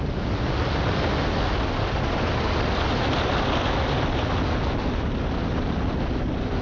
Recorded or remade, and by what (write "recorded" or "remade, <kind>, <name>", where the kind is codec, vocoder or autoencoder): recorded